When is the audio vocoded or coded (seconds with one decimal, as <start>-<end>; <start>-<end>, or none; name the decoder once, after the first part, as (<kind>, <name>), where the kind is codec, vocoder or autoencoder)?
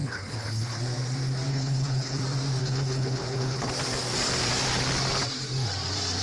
0.0-0.8 (codec, HILCodec); 1.5-2.2; 2.6-3.7